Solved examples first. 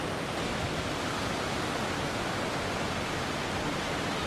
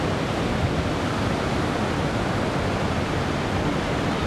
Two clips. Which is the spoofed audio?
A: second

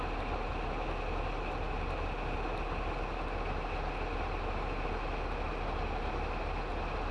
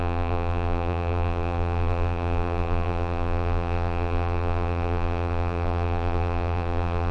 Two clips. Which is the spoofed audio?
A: second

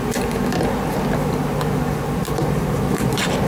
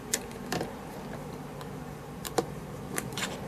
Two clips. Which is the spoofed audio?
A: second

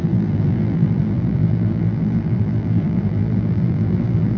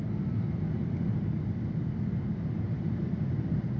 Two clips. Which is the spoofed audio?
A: first